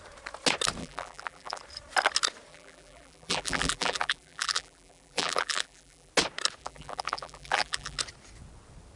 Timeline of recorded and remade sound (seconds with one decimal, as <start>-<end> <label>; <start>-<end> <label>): 0.0-0.8 recorded; 0.8-1.6 remade; 1.6-2.5 recorded; 2.5-6.1 remade; 6.1-6.6 recorded; 6.6-8.0 remade; 8.0-9.0 recorded